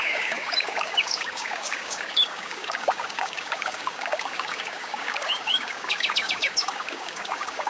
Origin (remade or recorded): remade